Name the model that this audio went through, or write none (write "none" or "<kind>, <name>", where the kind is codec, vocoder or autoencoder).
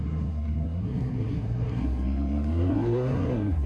codec, SNAC